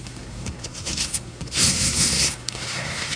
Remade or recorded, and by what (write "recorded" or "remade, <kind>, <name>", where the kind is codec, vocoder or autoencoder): remade, codec, SNAC